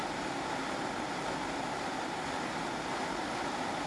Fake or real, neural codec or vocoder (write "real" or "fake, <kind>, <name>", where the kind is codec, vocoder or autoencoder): real